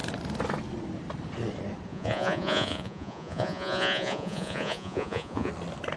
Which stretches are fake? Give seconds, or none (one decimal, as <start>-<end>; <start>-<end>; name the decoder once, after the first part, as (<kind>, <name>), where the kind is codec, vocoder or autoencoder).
1.9-5.5 (vocoder, Vocos)